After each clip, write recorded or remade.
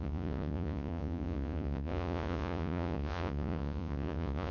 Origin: remade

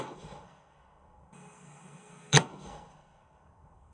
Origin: remade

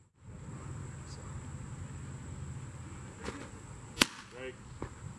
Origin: recorded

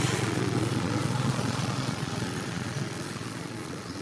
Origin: remade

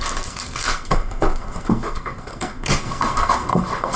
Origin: remade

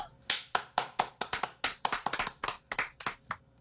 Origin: recorded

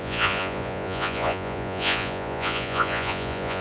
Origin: remade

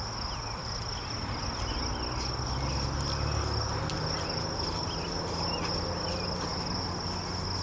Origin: recorded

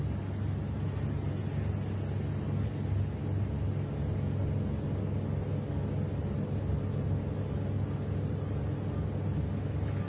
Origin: recorded